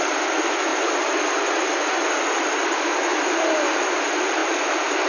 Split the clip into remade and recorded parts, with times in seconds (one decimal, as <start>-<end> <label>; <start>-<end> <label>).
0.0-3.1 recorded; 3.1-3.8 remade; 3.8-5.1 recorded